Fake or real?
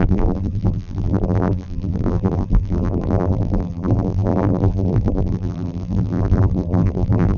fake